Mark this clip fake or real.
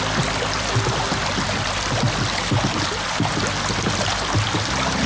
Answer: real